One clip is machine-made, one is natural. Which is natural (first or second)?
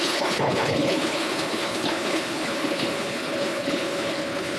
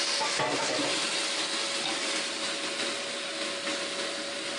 second